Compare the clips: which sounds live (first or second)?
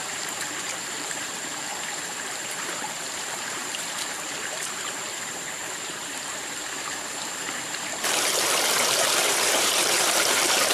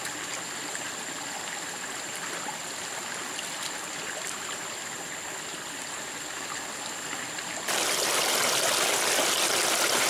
second